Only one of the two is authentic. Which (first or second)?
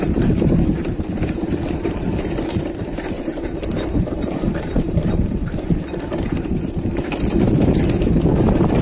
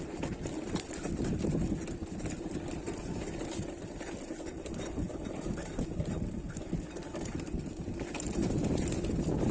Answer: second